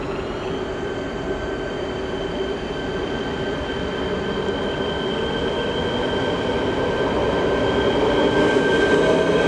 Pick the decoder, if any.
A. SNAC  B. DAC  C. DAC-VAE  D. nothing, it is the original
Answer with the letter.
D